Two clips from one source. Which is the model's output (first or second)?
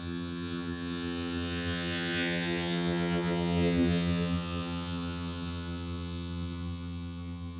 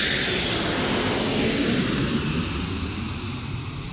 first